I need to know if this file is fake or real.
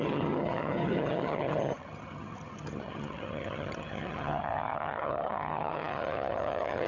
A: fake